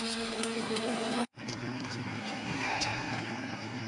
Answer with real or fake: fake